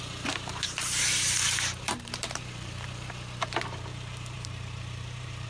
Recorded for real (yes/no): no